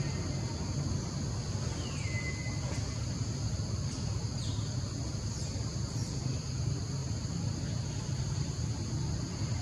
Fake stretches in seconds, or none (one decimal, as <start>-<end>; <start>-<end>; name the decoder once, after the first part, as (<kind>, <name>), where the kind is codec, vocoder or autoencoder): 7.0-8.5 (vocoder, BigVGAN v2)